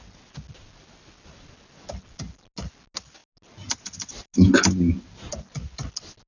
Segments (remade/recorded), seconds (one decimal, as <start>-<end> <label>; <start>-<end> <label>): 0.0-6.3 recorded